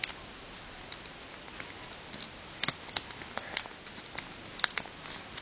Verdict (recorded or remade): recorded